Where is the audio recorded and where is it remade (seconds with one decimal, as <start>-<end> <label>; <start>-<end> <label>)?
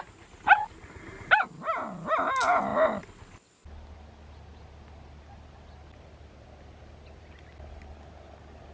0.0-8.7 recorded